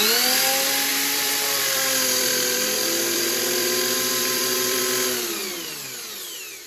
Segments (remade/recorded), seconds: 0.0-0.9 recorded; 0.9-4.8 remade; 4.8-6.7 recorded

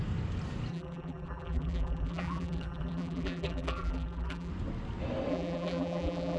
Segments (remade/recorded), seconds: 0.0-0.7 recorded; 0.7-4.5 remade; 4.5-5.3 recorded; 5.3-6.4 remade